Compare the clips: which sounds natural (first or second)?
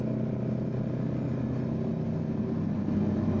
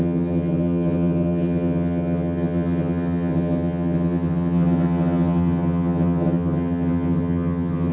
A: first